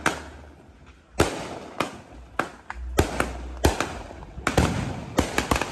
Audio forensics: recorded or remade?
recorded